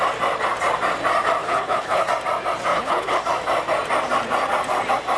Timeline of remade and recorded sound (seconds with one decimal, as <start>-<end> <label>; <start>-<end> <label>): 0.0-1.4 recorded; 1.4-2.1 remade; 2.1-2.7 recorded; 2.7-3.2 remade; 3.2-5.2 recorded